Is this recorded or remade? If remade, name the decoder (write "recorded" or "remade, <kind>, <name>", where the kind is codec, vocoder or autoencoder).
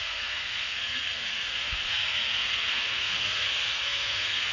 remade, codec, SNAC